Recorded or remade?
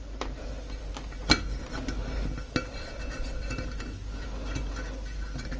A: recorded